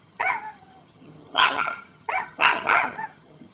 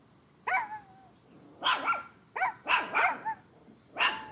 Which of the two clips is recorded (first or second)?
second